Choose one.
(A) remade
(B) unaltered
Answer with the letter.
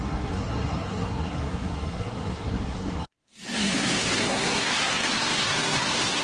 A